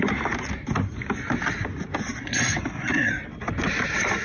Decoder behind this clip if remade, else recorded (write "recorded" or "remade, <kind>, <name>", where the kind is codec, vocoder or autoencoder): recorded